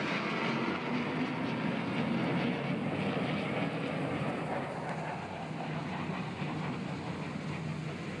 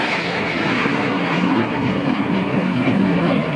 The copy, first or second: second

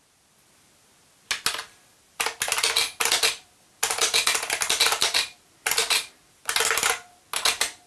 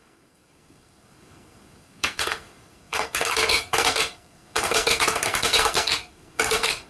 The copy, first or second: second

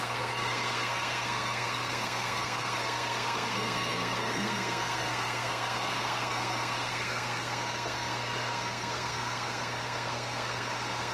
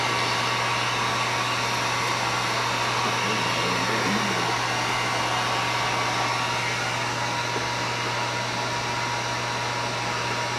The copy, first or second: first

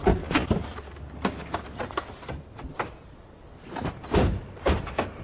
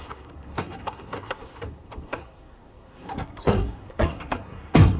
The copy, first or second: second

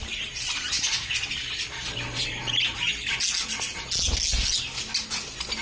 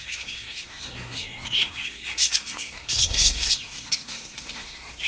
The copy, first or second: second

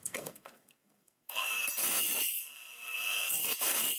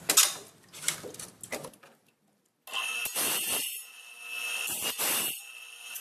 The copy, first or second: first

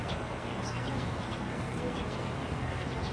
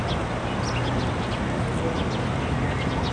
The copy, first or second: first